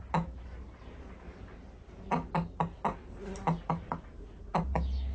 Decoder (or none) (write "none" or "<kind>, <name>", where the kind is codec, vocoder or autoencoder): none